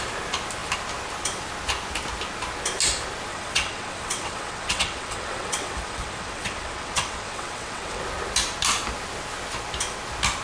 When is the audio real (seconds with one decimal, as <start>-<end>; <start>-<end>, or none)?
0.0-3.3; 8.0-10.4

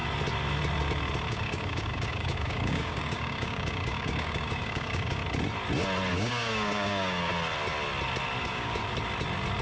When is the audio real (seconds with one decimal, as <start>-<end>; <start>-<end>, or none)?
0.0-1.3; 5.2-6.1; 7.3-8.4; 8.8-9.6

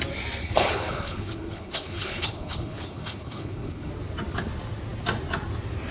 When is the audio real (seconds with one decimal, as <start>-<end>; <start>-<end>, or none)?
0.0-0.4; 3.9-5.9

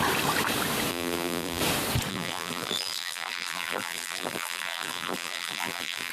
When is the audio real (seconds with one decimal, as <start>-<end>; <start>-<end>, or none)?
0.0-0.9; 1.6-2.1